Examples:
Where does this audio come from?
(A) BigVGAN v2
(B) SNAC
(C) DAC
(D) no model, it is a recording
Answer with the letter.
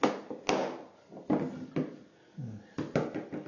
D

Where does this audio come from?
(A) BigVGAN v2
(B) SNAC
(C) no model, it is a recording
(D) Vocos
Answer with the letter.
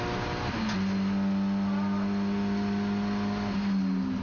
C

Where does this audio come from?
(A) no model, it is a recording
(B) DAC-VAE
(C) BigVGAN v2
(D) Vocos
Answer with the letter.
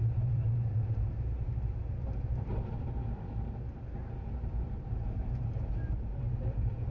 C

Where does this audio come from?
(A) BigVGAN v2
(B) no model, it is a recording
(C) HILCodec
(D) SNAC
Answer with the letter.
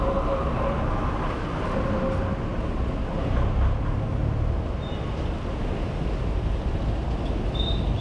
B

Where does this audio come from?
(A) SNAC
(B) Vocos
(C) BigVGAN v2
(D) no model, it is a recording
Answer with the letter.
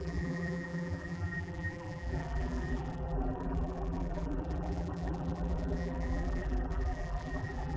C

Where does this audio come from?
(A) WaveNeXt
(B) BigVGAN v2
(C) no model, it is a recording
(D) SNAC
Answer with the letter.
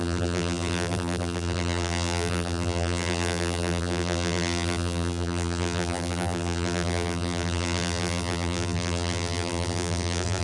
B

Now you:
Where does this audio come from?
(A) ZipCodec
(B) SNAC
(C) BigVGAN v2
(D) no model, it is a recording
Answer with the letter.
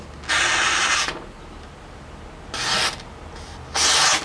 D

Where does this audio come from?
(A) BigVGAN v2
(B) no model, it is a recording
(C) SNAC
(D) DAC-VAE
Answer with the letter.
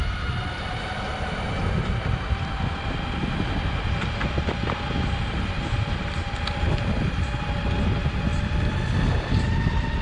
B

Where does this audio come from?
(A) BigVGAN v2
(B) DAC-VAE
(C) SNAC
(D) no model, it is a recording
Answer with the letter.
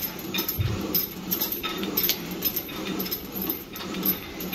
A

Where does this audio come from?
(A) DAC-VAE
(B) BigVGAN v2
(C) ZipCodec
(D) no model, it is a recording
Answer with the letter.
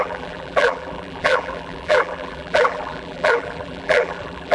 B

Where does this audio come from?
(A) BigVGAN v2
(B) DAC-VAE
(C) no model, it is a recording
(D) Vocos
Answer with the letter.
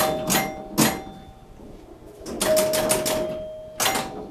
C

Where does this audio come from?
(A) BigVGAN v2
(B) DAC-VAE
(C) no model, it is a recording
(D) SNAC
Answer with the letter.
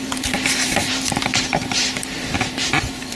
A